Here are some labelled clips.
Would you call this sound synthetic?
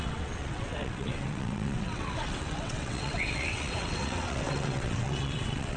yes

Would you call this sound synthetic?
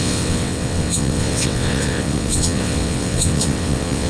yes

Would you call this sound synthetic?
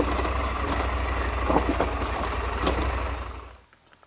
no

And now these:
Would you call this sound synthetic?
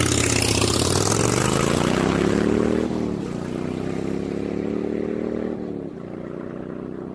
no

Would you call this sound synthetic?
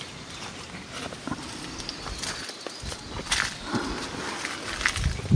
no